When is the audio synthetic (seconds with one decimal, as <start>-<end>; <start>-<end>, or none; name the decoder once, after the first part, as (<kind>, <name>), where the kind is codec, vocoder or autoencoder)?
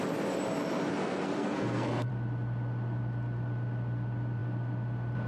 0.9-2.1 (codec, SNAC)